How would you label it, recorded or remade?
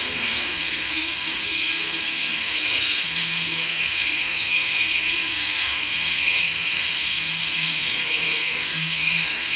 remade